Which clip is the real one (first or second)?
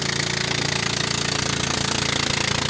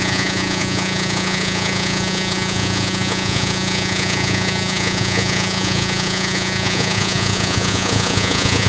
first